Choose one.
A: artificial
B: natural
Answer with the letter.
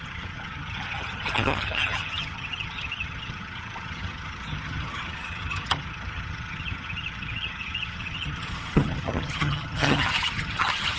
A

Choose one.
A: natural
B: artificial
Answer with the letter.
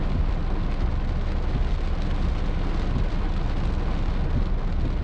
A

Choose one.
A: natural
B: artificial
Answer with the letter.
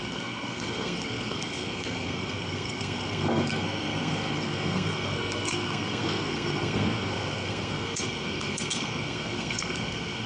B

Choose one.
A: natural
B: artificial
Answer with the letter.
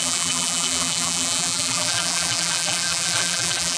B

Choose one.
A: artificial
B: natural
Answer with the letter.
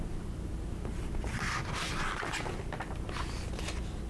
B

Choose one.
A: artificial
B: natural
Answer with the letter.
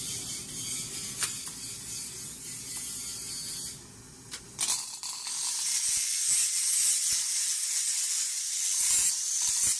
B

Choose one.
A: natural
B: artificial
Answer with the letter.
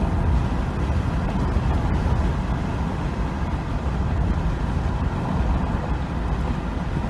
A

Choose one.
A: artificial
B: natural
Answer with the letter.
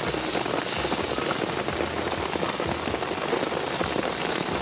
B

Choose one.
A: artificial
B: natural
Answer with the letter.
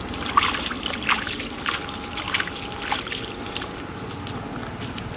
B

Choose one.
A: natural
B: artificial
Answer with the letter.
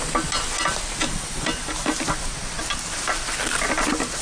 A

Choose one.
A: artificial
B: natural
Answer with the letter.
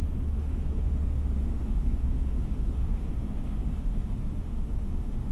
A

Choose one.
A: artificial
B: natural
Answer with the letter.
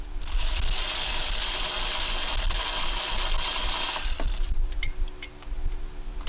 B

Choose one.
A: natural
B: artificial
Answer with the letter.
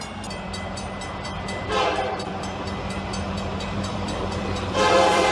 B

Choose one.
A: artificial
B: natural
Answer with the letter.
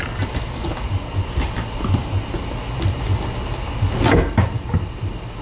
B